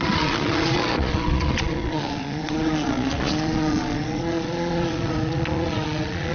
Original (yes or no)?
no